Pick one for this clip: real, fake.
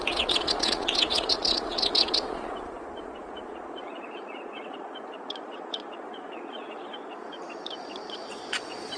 fake